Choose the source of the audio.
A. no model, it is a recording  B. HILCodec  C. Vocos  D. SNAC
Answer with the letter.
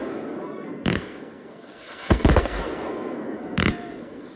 D